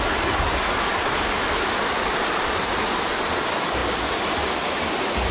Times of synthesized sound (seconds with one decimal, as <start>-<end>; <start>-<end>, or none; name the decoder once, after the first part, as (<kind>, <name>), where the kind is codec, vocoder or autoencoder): none